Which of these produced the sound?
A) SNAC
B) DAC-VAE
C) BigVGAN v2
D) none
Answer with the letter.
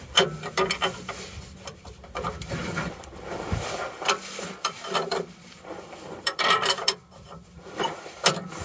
C